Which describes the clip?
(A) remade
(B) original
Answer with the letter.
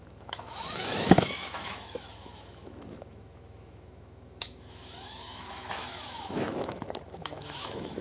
A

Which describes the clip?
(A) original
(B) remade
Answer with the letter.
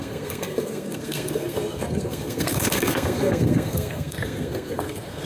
B